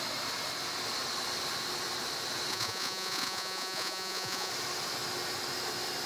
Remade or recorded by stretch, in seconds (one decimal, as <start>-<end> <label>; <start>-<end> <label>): 0.0-2.5 recorded; 2.5-4.5 remade; 4.5-6.1 recorded